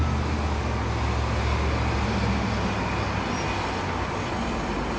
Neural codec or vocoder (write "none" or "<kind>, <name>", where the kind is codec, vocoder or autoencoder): none